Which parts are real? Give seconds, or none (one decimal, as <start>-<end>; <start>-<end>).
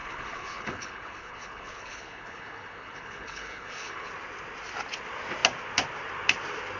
4.1-6.8